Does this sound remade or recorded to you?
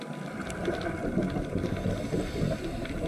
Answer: recorded